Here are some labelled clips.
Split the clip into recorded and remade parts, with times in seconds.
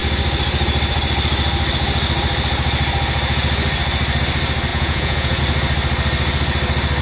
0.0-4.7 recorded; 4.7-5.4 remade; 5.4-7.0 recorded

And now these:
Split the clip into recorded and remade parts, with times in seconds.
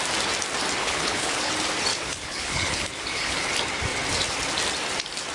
0.0-0.8 recorded; 0.8-1.5 remade; 1.5-1.9 recorded; 1.9-3.5 remade; 3.5-5.3 recorded